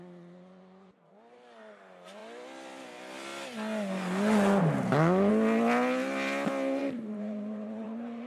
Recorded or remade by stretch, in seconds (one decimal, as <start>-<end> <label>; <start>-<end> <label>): 0.0-6.8 recorded; 6.8-8.3 remade